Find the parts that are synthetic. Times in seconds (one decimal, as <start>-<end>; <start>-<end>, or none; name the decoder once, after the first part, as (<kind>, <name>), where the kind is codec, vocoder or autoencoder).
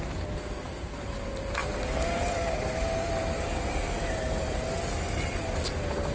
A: none